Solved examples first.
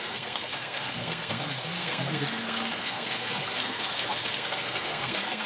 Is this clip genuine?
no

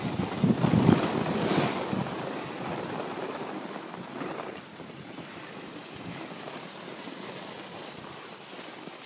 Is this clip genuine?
yes